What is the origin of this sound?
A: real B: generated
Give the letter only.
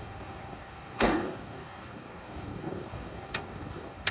B